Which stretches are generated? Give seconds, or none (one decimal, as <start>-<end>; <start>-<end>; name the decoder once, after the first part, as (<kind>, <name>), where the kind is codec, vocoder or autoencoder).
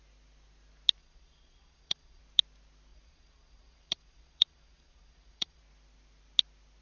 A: 1.0-2.2 (vocoder, Vocos); 2.9-5.6